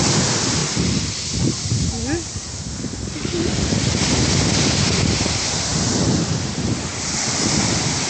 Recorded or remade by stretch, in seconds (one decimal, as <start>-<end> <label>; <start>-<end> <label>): 0.0-8.1 recorded